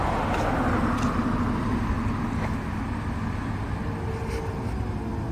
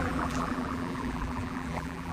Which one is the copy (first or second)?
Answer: second